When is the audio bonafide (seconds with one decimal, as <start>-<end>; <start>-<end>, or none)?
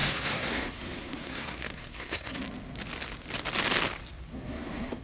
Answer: 2.4-4.3